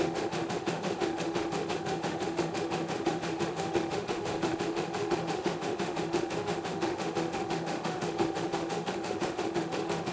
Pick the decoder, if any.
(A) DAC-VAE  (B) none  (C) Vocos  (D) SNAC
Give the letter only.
A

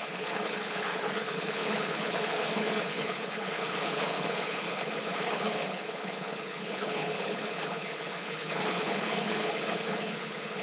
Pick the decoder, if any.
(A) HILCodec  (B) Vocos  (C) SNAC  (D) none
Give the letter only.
A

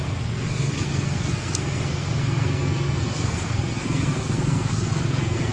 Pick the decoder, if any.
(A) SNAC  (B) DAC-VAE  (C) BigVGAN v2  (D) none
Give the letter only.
A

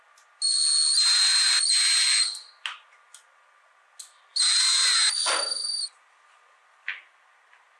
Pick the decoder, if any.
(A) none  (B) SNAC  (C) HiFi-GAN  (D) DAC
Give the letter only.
A